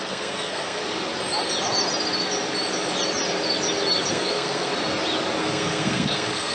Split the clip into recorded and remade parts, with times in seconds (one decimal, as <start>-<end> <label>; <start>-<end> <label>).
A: 0.0-0.8 remade; 0.8-4.1 recorded; 4.1-4.7 remade; 4.7-5.4 recorded; 5.4-6.5 remade